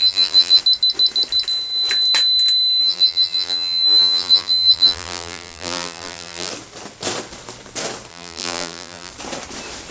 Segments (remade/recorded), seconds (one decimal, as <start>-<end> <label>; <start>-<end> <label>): 0.0-0.6 remade; 0.6-2.8 recorded; 2.8-6.5 remade; 6.5-8.1 recorded; 8.1-9.1 remade; 9.1-9.9 recorded